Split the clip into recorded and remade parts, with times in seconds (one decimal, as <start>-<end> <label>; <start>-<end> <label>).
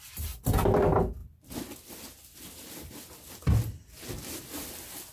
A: 0.0-5.1 recorded